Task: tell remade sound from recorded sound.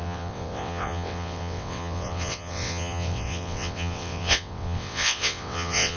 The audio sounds remade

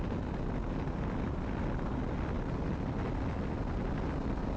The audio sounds recorded